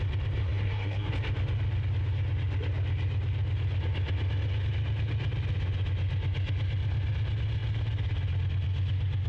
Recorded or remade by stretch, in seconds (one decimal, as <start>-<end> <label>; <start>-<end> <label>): 0.0-0.4 recorded; 0.4-1.1 remade; 1.1-9.3 recorded